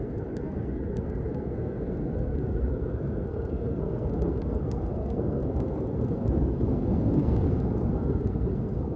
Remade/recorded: remade